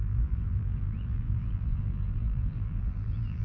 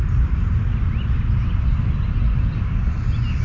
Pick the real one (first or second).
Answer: second